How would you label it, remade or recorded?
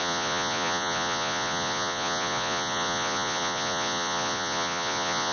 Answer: remade